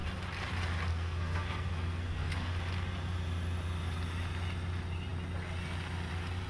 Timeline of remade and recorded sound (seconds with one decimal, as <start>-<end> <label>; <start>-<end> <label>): 0.0-0.9 recorded; 0.9-2.5 remade; 2.5-6.5 recorded